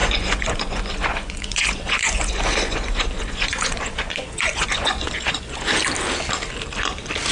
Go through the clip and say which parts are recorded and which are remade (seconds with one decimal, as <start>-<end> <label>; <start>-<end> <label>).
0.0-5.7 remade; 5.7-7.3 recorded